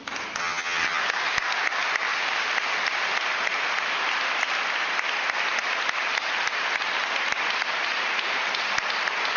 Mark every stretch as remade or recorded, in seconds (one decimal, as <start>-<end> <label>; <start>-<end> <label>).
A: 0.0-0.4 recorded; 0.4-1.0 remade; 1.0-9.4 recorded